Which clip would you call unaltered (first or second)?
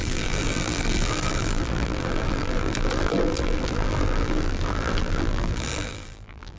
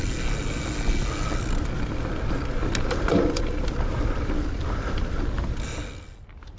second